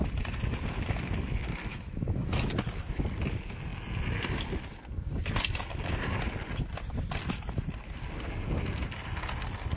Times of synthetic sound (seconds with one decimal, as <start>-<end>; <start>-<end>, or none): 1.7-2.5